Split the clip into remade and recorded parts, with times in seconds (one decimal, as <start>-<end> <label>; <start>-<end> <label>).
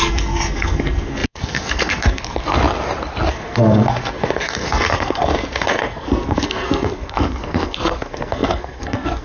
0.0-2.6 remade; 2.6-3.3 recorded; 3.3-9.2 remade